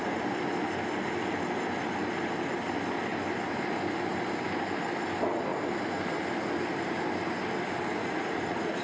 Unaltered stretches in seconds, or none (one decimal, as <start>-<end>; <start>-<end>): 0.0-8.0